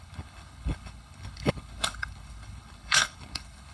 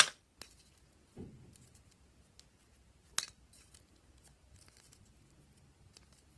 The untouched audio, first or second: second